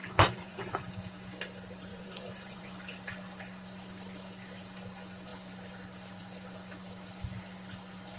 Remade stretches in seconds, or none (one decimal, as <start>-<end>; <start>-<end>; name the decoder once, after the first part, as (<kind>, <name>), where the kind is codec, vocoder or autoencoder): 0.0-0.9 (vocoder, Vocos); 1.9-2.7